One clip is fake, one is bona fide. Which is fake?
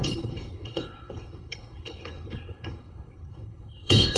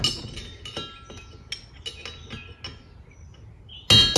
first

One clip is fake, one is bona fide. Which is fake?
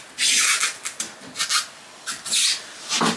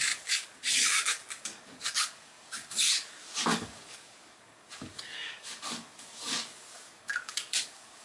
second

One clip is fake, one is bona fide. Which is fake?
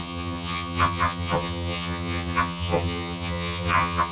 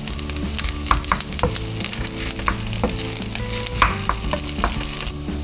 first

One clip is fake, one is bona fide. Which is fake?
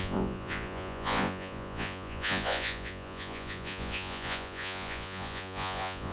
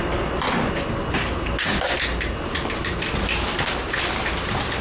first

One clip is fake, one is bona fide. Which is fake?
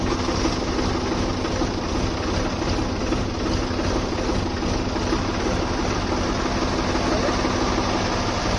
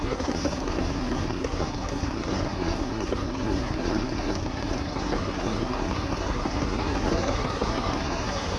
second